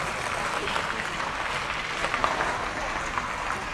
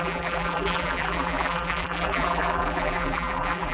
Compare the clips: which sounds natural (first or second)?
first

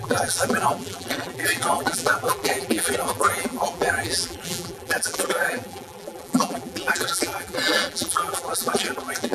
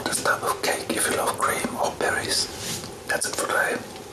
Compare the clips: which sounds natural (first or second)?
second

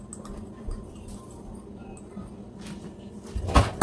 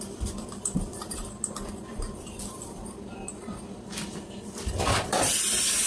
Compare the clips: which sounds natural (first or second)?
first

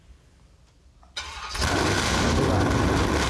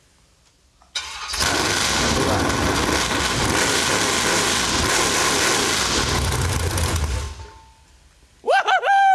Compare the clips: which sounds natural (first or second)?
second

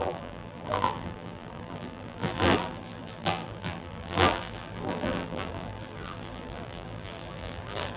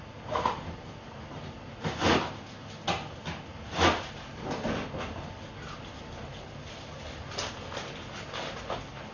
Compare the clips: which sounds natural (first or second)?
second